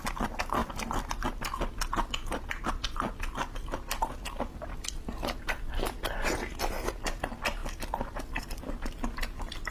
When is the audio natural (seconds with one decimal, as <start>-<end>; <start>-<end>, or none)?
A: 0.0-9.7